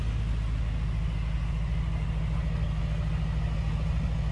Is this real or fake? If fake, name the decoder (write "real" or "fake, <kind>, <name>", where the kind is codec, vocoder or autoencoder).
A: real